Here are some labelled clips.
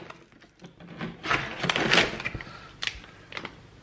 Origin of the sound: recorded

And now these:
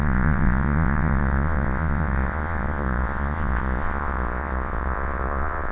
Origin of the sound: remade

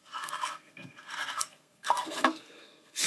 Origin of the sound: remade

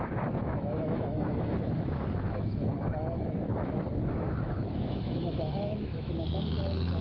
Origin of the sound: remade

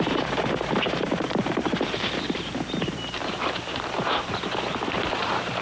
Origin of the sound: remade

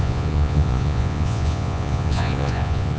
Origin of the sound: remade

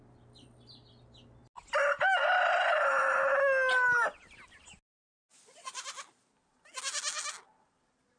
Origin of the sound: recorded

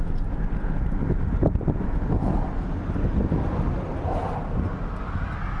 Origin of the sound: recorded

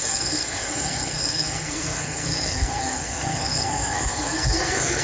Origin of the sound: remade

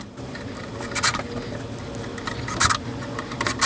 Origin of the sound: recorded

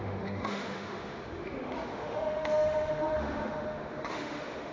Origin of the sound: remade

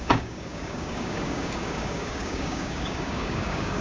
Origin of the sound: remade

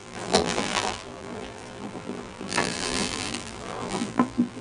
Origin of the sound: remade